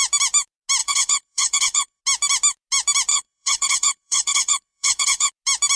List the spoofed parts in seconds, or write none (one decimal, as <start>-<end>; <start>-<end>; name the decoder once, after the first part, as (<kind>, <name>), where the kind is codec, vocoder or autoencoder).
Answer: 0.8-2.0 (codec, HILCodec); 3.1-5.3